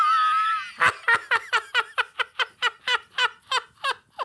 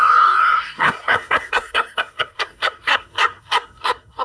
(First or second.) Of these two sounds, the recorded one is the first